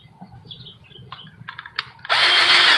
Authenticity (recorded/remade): recorded